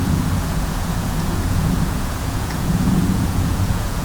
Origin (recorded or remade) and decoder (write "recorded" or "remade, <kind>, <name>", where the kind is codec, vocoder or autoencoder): remade, vocoder, Vocos